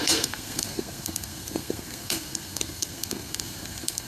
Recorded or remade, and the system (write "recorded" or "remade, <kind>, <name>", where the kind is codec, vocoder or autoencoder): remade, codec, SNAC